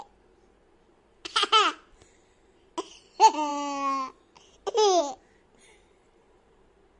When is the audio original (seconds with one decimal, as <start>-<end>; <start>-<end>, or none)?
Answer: 0.0-7.0